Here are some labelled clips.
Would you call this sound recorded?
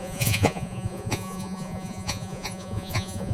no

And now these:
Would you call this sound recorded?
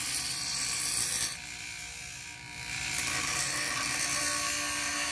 yes